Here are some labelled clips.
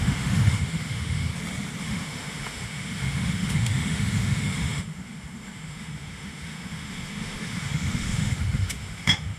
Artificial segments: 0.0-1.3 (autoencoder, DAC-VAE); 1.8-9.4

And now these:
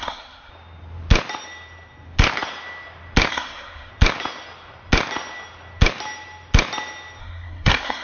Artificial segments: 0.0-0.5 (codec, SNAC); 3.3-3.9; 7.2-8.0

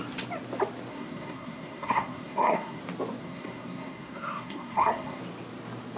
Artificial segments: 0.9-2.8 (codec, SNAC); 3.2-5.2